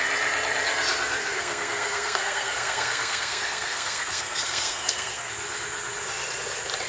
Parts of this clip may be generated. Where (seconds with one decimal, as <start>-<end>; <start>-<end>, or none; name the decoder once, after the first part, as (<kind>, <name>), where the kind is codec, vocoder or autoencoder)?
1.2-5.3 (codec, SNAC)